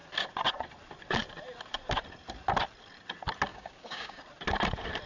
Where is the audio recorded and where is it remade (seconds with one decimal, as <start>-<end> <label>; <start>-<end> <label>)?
0.0-3.5 recorded; 3.5-4.2 remade; 4.2-5.1 recorded